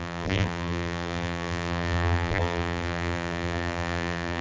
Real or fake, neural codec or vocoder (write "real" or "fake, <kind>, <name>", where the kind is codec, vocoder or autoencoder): fake, vocoder, BigVGAN v2